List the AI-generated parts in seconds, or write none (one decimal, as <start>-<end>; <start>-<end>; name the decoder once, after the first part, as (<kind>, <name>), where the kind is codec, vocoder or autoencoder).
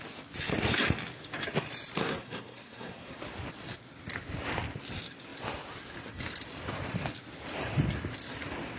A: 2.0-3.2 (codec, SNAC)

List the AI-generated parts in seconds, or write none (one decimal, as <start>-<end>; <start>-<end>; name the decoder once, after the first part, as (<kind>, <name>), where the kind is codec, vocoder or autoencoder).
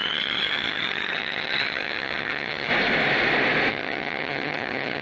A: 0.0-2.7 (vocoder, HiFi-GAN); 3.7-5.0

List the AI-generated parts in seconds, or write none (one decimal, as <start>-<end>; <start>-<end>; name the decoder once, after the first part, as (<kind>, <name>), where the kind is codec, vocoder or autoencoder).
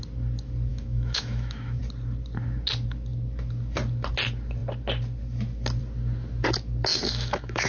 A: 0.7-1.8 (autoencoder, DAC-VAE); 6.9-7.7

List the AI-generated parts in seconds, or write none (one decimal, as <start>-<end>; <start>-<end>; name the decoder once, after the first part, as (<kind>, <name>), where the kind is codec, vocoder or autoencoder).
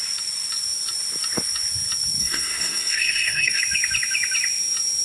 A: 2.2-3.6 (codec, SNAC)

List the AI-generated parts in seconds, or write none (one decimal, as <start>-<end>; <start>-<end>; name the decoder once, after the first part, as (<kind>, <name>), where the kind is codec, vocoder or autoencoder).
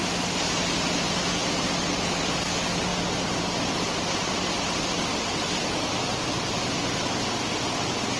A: 1.4-2.2 (vocoder, BigVGAN v2); 2.9-7.0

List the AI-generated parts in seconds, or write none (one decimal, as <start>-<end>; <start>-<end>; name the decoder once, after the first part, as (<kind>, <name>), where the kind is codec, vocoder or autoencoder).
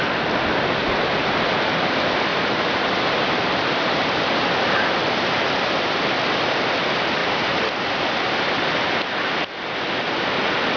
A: 2.3-4.7 (vocoder, BigVGAN v2); 7.2-7.7